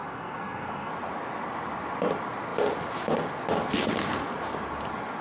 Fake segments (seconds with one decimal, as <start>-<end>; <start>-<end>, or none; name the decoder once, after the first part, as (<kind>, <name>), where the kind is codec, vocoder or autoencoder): 0.0-0.9 (codec, SNAC)

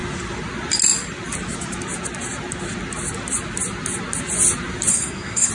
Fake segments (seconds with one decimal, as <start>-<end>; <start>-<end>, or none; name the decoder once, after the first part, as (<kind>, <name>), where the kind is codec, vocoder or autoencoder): 4.9-5.5 (codec, SNAC)

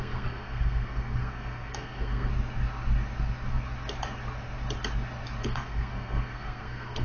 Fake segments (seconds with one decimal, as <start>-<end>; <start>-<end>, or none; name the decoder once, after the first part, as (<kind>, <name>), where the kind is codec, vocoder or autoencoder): 0.0-2.3 (codec, SNAC); 5.4-7.0

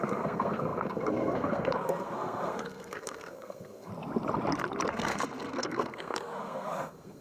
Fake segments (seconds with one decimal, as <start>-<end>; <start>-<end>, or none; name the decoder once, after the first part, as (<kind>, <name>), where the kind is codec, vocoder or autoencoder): 0.0-3.9 (codec, SNAC); 4.9-7.2

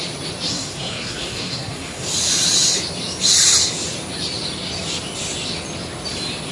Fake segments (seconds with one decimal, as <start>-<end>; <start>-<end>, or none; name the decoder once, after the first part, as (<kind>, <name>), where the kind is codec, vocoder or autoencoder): 0.5-2.1 (codec, SNAC)

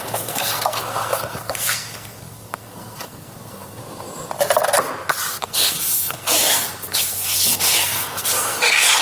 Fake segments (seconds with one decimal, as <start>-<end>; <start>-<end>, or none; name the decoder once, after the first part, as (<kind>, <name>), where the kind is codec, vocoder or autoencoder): 0.0-3.8 (codec, SNAC); 5.4-9.0